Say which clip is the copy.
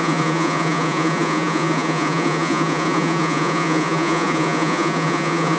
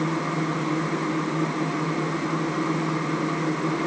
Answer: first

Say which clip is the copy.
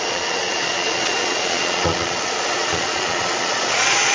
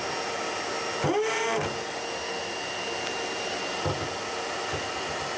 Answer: first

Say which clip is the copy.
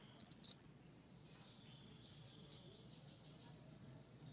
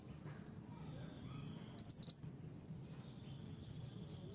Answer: first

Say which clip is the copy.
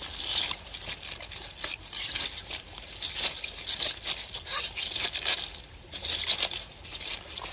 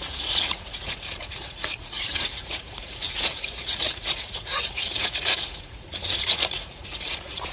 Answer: second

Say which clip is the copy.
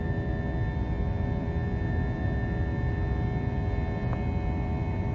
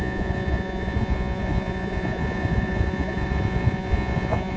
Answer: second